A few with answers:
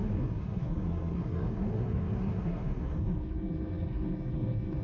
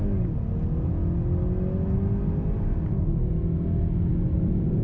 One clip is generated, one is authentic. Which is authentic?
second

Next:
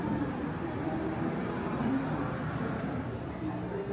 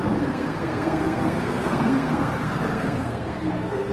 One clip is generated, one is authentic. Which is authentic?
first